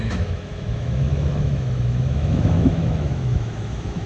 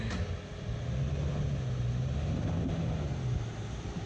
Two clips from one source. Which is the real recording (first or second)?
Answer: second